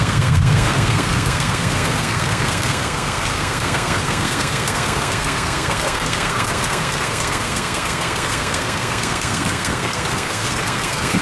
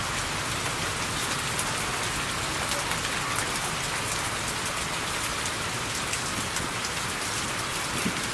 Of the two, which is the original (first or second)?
second